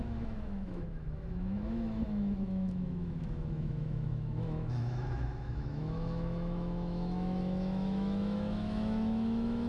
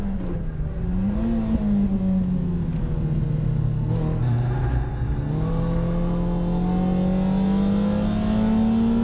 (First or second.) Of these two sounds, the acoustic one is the second